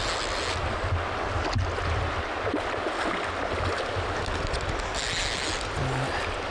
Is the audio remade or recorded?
recorded